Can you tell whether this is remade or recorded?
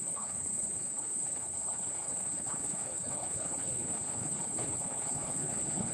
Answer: remade